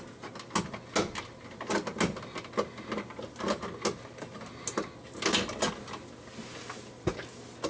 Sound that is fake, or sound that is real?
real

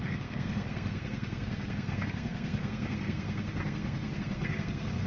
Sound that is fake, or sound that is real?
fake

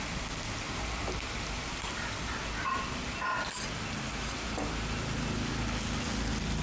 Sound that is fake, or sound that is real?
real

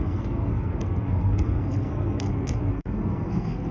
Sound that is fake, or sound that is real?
fake